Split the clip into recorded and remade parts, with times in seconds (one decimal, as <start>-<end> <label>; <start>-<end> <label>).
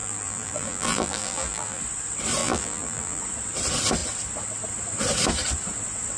0.0-1.8 remade; 1.8-2.4 recorded; 2.4-3.2 remade; 3.2-6.2 recorded